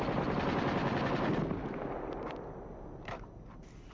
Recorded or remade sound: recorded